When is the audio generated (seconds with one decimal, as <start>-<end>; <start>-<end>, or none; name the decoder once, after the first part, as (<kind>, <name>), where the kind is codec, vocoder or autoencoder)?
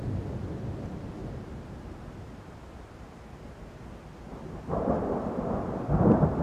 1.2-3.7 (vocoder, BigVGAN v2); 4.3-5.9